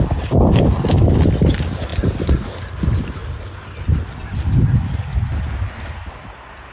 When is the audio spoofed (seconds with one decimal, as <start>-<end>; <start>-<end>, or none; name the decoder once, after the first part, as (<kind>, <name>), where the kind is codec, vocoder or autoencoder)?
1.9-2.5 (vocoder, BigVGAN v2); 3.2-4.2